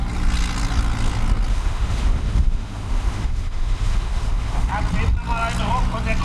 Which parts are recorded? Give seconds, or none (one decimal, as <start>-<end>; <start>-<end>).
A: 0.0-1.5; 4.7-6.2